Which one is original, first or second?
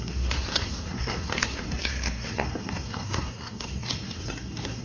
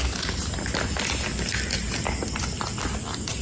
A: second